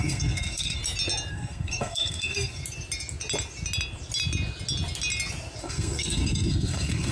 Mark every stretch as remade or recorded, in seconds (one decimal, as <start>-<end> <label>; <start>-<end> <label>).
0.0-0.8 remade; 0.8-1.3 recorded; 1.3-2.6 remade; 2.6-5.6 recorded; 5.6-7.1 remade